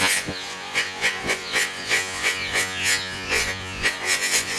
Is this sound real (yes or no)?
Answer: no